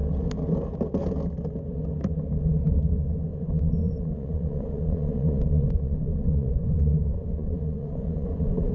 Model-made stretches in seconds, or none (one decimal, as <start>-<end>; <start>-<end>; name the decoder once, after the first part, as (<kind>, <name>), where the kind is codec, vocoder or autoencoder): 3.3-8.7 (vocoder, Vocos)